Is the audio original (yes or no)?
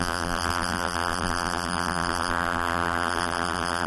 no